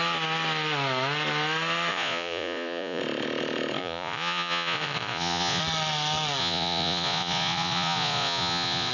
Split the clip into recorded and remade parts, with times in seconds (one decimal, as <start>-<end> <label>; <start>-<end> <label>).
0.0-1.9 recorded; 1.9-3.0 remade; 3.0-3.8 recorded; 3.8-5.6 remade; 5.6-6.4 recorded; 6.4-8.9 remade

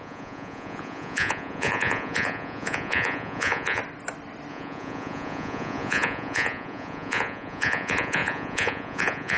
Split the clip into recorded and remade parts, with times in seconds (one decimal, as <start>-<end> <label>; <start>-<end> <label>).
0.0-3.8 remade; 3.8-4.5 recorded; 4.5-9.4 remade